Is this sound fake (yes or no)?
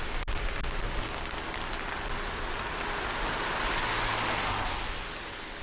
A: no